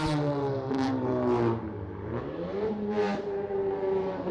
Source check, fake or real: fake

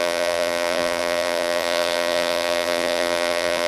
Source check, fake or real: fake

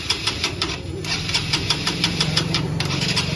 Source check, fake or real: fake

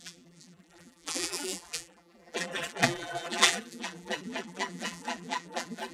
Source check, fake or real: fake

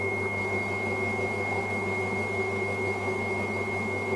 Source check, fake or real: real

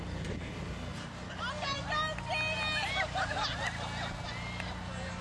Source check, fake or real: real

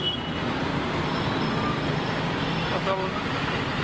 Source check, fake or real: fake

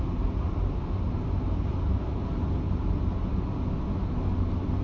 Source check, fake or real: real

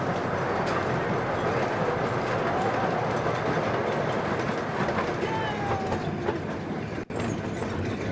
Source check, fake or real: real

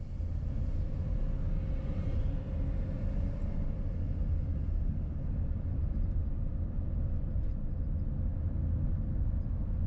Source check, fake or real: real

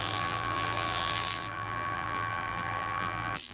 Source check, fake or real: fake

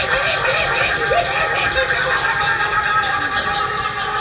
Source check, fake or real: real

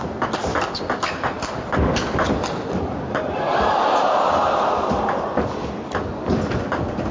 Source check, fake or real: fake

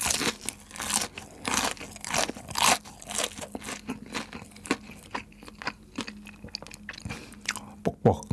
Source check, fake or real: real